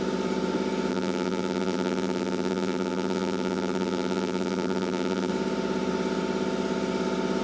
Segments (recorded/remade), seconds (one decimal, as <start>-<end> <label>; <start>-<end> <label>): 0.0-0.9 recorded; 0.9-5.3 remade; 5.3-7.4 recorded